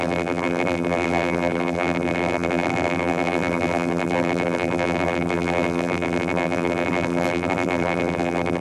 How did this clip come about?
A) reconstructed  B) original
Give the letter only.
A